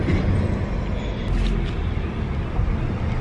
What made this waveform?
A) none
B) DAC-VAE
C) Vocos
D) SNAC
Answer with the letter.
A